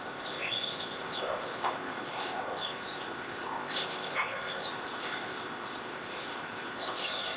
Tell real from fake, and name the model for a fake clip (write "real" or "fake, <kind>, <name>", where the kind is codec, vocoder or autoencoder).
fake, codec, ZipCodec